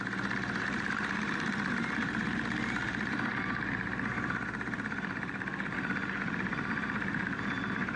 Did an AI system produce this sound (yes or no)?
yes